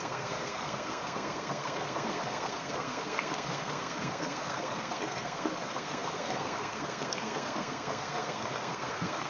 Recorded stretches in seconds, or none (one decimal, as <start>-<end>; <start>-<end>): none